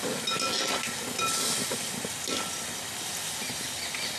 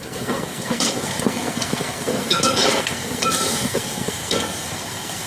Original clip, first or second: first